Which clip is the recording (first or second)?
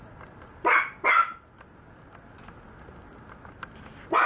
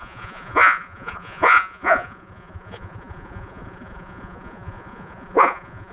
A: first